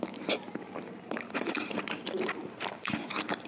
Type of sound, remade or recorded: remade